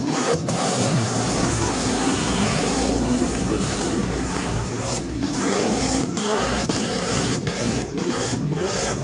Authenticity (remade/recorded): remade